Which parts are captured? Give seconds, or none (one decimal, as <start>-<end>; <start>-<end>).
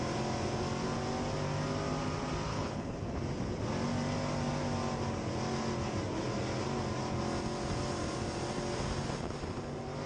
0.0-2.5; 3.1-10.1